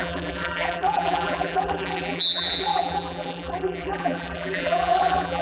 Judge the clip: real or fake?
fake